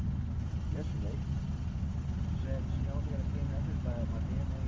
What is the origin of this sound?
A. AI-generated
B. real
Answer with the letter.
B